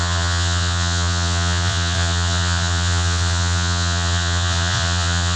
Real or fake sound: fake